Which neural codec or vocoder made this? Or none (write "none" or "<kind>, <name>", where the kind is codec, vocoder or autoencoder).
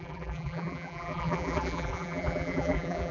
vocoder, BigVGAN v2